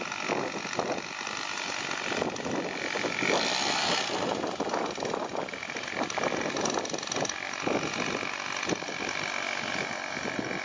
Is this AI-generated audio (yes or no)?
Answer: no